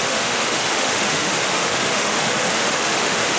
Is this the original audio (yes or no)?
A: no